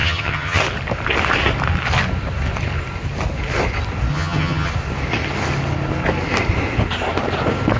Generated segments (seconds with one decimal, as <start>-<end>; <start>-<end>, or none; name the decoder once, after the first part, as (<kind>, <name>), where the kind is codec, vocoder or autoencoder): 0.0-0.6 (vocoder, HiFi-GAN); 4.1-4.7